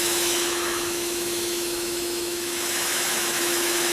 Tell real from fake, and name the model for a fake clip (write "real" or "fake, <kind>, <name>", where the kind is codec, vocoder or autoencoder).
fake, autoencoder, DAC-VAE